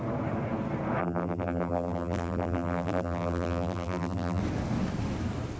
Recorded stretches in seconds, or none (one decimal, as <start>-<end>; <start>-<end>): 0.0-1.0; 4.4-5.6